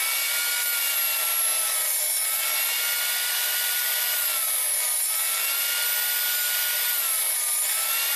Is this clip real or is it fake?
real